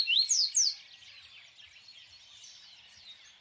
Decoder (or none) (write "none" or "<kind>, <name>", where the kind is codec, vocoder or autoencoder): none